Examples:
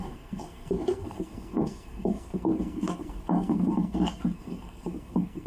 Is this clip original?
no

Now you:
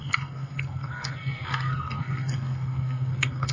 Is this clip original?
no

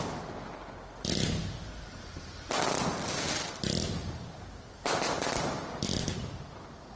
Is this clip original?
yes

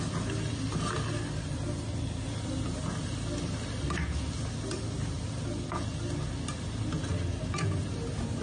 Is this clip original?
yes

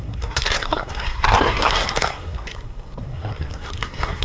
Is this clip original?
no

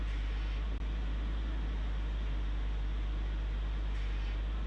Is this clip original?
yes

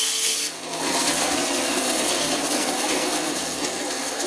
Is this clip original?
no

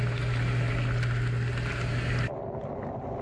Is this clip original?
yes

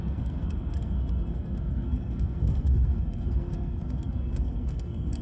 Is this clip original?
no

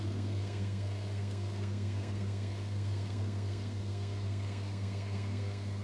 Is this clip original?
no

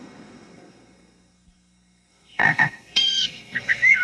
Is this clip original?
no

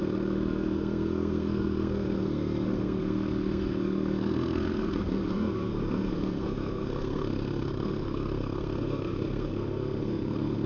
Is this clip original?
no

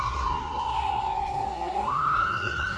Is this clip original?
no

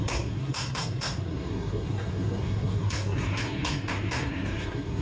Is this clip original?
no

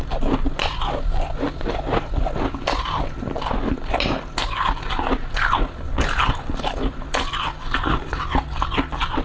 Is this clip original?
yes